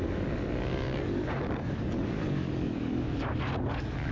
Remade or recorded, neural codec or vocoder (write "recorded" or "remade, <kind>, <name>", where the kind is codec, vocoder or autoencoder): remade, codec, DAC